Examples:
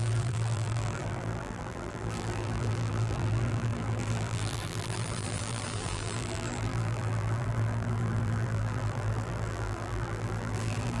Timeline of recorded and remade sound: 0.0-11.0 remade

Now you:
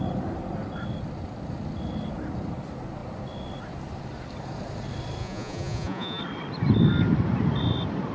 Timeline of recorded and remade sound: 0.0-5.2 recorded; 5.2-6.2 remade; 6.2-8.1 recorded

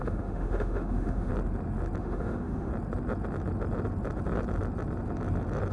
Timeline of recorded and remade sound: 0.0-1.3 remade; 1.3-2.0 recorded; 2.0-2.7 remade; 2.7-5.7 recorded

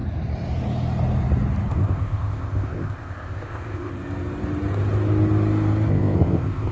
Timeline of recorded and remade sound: 0.0-1.7 recorded; 1.7-3.9 remade; 3.9-5.9 recorded; 5.9-6.7 remade

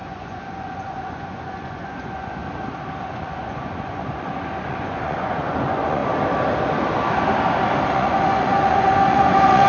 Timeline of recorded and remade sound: 0.0-2.4 remade; 2.4-3.0 recorded; 3.0-6.0 remade; 6.0-7.9 recorded; 7.9-9.7 remade

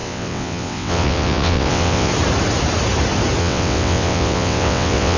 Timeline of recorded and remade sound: 0.0-2.1 remade; 2.1-3.4 recorded; 3.4-5.2 remade